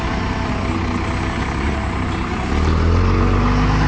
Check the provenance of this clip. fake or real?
real